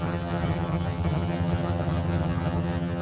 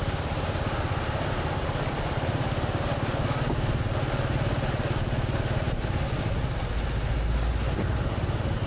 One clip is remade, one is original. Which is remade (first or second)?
first